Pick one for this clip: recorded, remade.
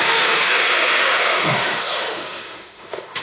remade